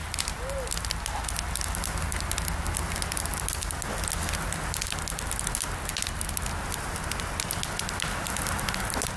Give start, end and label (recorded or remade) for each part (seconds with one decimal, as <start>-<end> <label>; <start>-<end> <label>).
0.0-9.2 recorded